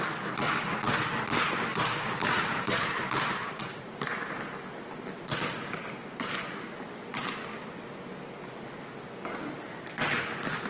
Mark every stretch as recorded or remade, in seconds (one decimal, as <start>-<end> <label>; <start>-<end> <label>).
0.0-1.7 recorded; 1.7-4.9 remade; 4.9-10.7 recorded